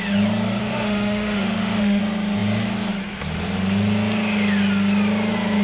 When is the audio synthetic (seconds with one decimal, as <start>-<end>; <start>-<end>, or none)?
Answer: 0.6-2.0